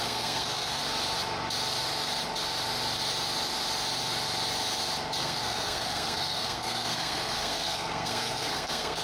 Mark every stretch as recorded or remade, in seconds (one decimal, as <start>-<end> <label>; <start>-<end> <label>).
0.0-0.8 remade; 0.8-5.2 recorded; 5.2-9.0 remade